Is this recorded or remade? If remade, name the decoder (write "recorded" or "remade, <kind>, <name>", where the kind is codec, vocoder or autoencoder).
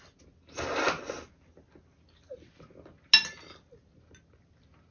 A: recorded